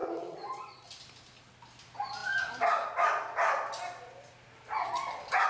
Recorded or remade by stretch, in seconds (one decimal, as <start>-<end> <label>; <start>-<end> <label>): 0.0-0.8 remade; 0.8-5.5 recorded

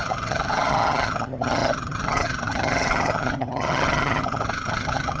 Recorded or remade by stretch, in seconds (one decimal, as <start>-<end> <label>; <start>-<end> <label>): 0.0-5.2 remade